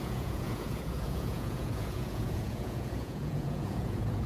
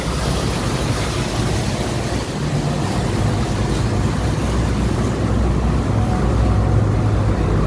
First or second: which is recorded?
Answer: second